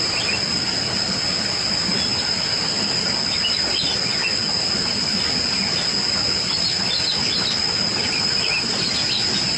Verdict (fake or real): real